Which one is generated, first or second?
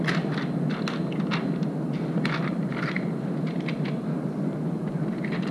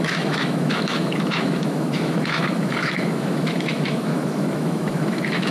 second